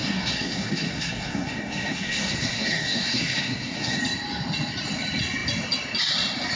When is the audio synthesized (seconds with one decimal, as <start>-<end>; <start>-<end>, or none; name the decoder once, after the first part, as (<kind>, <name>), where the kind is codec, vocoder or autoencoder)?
0.0-4.0 (codec, SNAC)